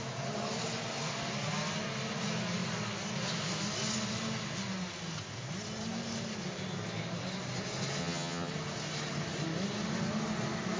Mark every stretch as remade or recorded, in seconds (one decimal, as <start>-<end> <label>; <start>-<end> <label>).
0.0-8.0 recorded; 8.0-8.5 remade; 8.5-10.8 recorded